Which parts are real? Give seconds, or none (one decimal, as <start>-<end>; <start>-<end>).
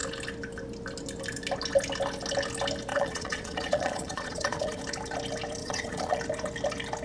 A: 0.0-2.9; 4.8-5.6; 6.2-7.0